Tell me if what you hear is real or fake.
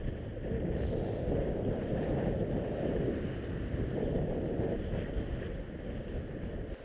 real